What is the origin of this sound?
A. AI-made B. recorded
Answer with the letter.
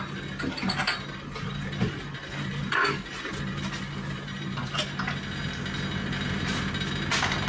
B